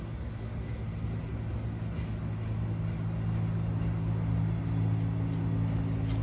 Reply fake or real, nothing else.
real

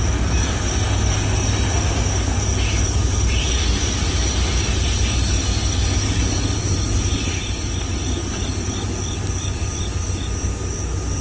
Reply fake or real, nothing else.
real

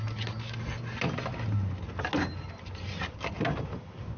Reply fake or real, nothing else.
real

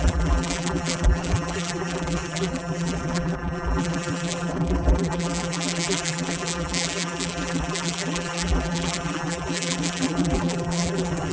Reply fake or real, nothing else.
fake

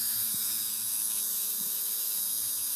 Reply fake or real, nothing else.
fake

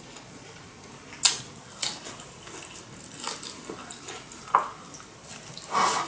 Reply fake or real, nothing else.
real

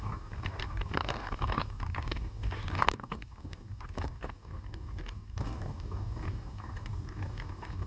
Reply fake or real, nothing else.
fake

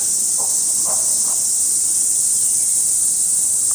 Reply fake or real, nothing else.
real